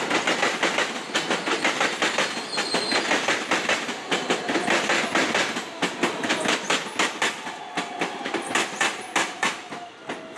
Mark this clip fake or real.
real